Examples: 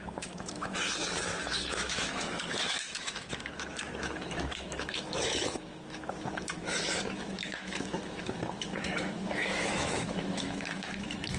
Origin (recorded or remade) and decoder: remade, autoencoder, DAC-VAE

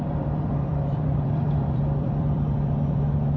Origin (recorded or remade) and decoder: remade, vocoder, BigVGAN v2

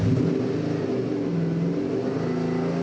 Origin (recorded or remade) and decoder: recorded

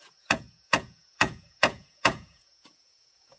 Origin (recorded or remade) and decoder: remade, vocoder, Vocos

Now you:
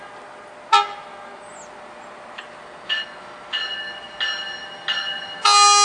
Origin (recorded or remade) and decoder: recorded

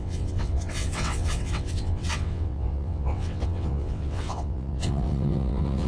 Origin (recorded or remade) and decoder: remade, vocoder, WaveNeXt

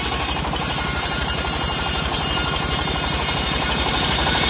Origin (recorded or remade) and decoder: remade, vocoder, BigVGAN v2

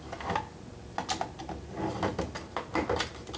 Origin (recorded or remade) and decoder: recorded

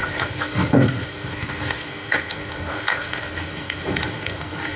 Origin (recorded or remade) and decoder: remade, codec, SNAC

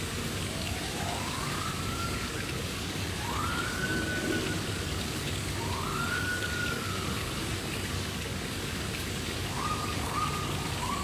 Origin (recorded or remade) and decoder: remade, codec, DAC